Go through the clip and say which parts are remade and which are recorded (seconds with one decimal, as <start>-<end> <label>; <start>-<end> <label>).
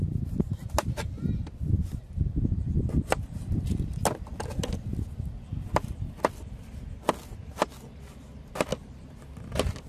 0.0-2.6 recorded; 2.6-3.6 remade; 3.6-9.9 recorded